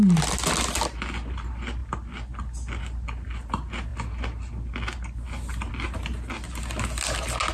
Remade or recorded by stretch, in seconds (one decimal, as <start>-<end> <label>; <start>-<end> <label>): 0.0-7.5 recorded